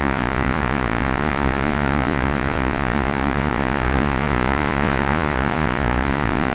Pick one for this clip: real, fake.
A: fake